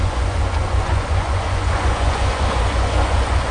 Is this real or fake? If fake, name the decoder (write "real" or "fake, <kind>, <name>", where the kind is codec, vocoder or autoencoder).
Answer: fake, vocoder, Vocos